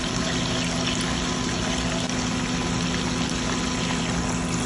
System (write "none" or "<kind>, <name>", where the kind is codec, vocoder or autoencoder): none